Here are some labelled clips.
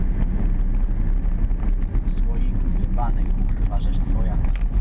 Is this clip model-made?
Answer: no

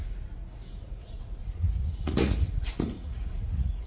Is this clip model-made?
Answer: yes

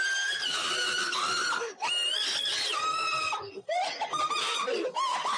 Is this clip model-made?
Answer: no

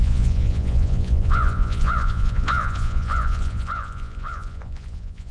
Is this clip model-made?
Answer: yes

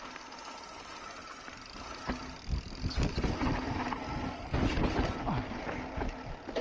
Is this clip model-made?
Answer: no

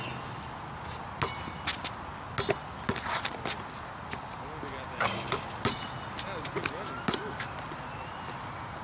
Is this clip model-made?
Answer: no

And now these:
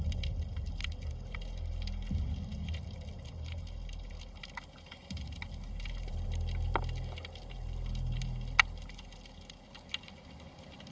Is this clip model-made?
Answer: no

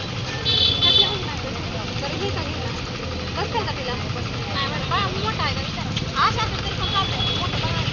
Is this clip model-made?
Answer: no